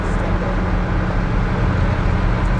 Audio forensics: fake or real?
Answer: real